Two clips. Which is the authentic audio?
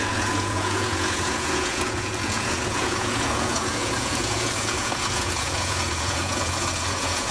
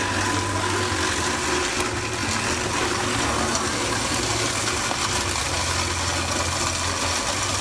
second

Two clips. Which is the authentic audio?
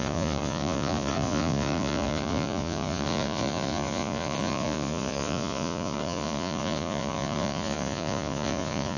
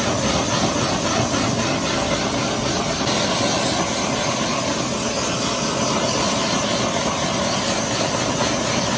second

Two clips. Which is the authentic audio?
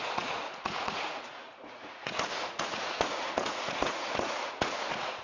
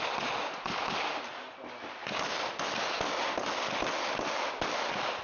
second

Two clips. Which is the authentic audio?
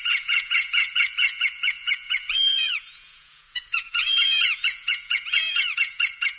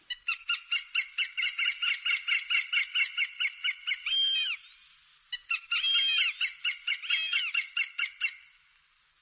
second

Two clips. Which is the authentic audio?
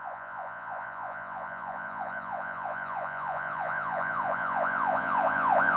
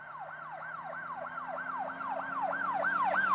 second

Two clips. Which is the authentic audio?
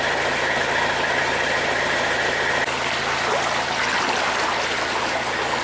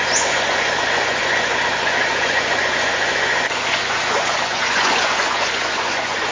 first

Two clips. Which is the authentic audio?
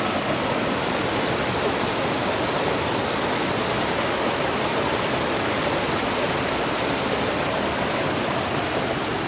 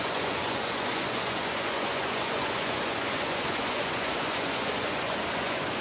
first